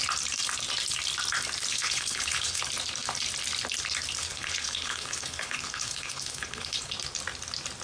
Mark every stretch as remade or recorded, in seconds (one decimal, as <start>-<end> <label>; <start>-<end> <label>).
0.0-1.7 recorded; 1.7-2.6 remade; 2.6-4.2 recorded; 4.2-6.9 remade; 6.9-7.8 recorded